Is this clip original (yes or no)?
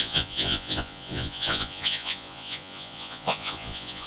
no